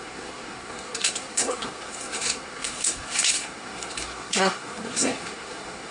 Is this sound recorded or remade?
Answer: remade